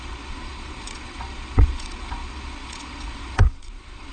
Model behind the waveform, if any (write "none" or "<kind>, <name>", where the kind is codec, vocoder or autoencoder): vocoder, Vocos